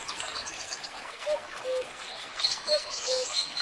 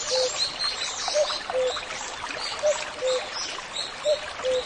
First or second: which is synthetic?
first